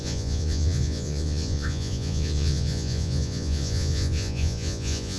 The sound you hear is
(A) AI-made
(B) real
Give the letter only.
A